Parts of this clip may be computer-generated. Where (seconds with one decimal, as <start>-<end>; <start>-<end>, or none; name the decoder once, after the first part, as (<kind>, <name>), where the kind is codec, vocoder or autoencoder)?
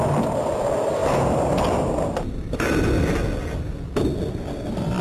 none